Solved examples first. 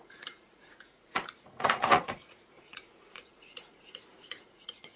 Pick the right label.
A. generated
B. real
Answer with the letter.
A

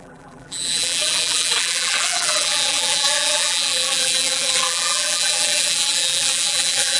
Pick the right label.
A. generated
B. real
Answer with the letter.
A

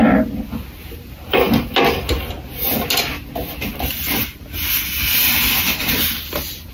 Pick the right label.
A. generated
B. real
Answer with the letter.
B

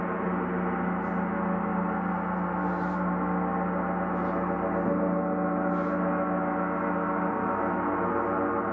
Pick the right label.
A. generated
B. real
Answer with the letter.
B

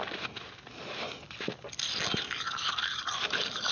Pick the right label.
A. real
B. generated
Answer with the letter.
A